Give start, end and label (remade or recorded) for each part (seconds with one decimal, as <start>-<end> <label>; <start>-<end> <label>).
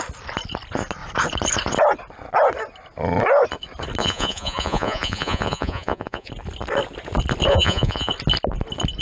0.0-4.0 recorded; 4.0-6.3 remade; 6.3-7.5 recorded; 7.5-8.1 remade; 8.1-9.0 recorded